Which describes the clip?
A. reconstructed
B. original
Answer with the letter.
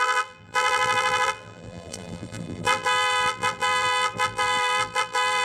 A